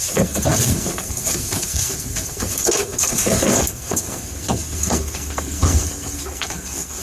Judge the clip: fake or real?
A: fake